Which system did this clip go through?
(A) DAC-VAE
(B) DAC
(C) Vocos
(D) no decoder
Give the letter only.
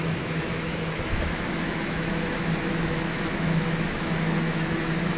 A